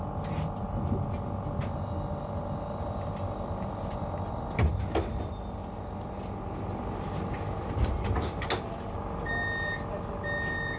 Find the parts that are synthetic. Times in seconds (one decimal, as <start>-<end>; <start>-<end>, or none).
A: none